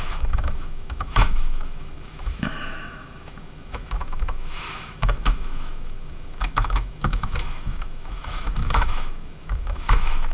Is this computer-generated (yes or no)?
yes